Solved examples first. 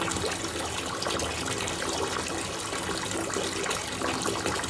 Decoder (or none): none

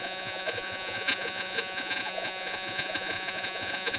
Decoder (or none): vocoder, Vocos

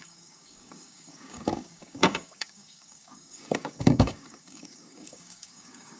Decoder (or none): codec, DAC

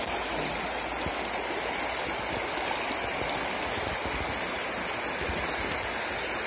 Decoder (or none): none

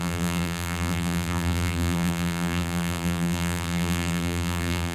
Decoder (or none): vocoder, BigVGAN v2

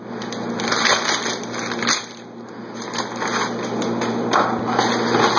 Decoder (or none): none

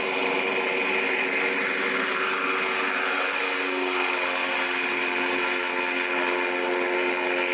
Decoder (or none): none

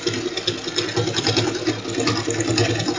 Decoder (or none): none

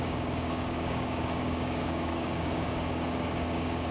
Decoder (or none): codec, DAC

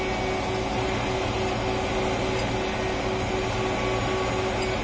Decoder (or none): none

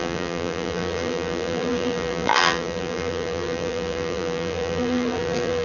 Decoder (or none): vocoder, BigVGAN v2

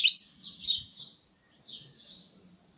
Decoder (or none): none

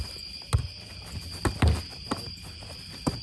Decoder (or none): none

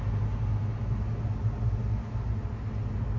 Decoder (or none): none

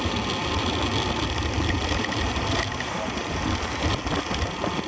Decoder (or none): none